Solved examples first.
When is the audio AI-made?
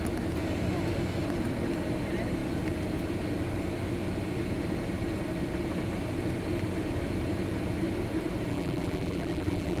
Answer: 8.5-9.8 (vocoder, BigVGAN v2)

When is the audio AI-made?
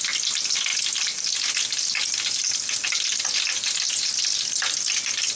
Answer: none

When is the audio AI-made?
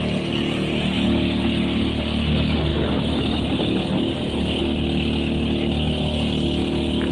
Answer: none